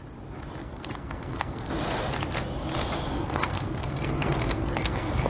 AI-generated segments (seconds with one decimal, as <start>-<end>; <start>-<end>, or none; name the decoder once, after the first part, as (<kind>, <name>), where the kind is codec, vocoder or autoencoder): 0.6-1.7 (codec, SNAC); 3.1-5.3